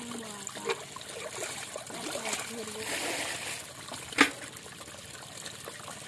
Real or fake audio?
real